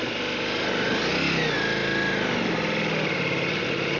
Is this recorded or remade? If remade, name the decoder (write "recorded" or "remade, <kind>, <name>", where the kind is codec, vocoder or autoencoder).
recorded